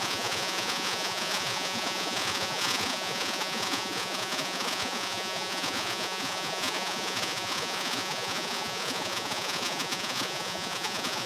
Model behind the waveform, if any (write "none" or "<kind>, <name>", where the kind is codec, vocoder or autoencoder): vocoder, Vocos